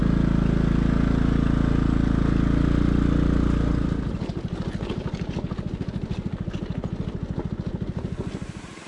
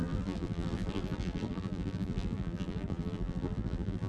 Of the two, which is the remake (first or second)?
second